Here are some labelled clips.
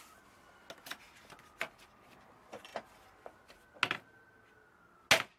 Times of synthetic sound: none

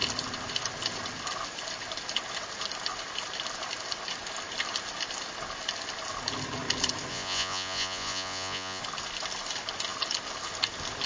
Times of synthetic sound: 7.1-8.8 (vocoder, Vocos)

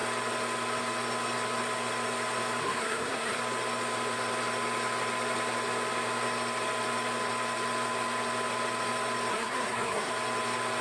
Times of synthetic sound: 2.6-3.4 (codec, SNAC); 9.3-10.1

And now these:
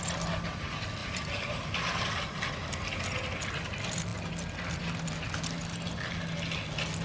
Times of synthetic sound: none

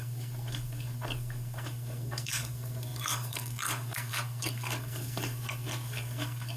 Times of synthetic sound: 0.0-6.6 (codec, SNAC)

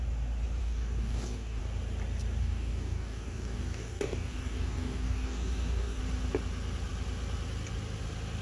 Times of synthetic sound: 0.6-1.6 (codec, DAC); 2.4-6.0

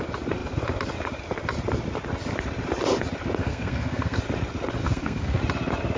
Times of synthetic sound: 3.4-4.2 (codec, SNAC); 4.8-5.4

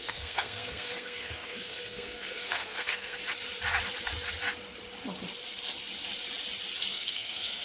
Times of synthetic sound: 0.0-3.2 (codec, SNAC); 6.9-7.6